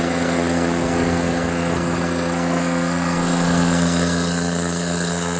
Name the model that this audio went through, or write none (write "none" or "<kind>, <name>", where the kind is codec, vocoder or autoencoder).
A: codec, SNAC